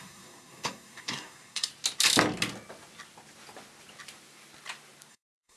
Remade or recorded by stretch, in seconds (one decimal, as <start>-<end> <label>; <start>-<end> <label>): 0.0-1.7 remade; 1.7-5.1 recorded; 5.1-5.6 remade